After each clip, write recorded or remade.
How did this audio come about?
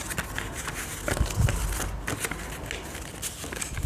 recorded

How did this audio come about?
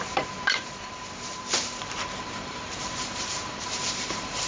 remade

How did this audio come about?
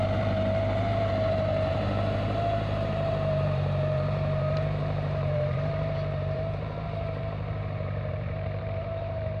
remade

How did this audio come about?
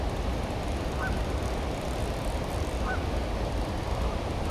recorded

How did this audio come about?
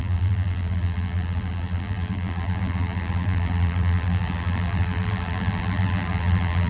remade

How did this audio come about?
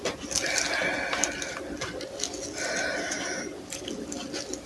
recorded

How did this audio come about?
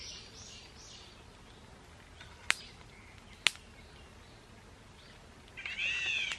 recorded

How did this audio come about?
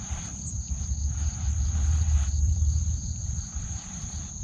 remade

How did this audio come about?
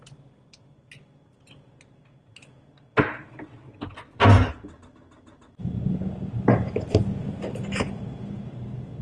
recorded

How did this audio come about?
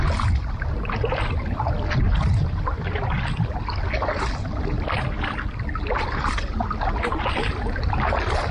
recorded